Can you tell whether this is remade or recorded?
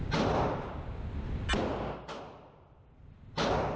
recorded